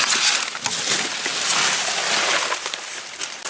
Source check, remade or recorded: recorded